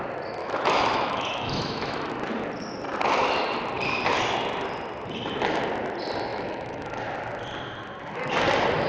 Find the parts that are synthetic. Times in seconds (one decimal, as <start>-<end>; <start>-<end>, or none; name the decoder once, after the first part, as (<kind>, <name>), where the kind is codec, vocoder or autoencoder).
0.4-2.1 (autoencoder, DAC-VAE); 6.3-7.0